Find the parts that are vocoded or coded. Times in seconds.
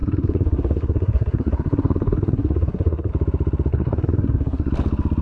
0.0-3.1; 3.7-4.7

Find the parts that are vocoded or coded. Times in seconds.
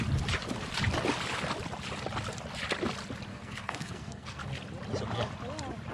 3.3-4.4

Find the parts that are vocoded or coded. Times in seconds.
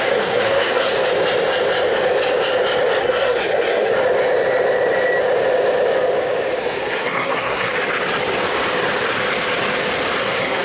0.0-0.9; 3.0-3.9; 6.6-7.7; 10.2-10.6